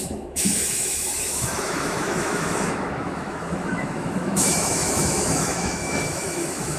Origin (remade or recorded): remade